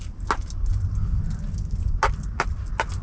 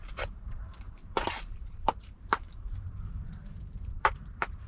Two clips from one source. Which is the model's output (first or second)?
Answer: second